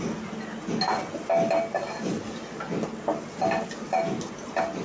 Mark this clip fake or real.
real